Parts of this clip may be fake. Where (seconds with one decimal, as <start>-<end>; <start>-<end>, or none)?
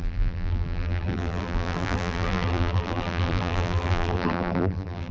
0.0-5.1